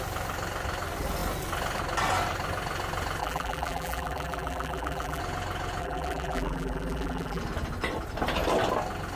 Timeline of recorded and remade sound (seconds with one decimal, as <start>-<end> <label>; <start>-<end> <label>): 0.0-3.2 recorded; 3.2-5.2 remade; 5.2-5.8 recorded; 5.8-7.4 remade; 7.4-9.2 recorded